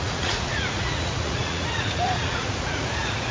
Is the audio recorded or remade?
remade